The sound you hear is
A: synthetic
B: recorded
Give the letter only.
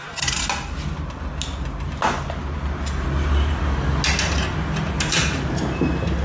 B